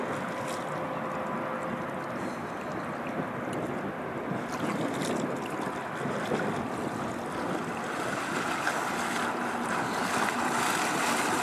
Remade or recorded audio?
recorded